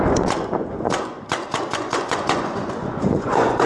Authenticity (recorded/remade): remade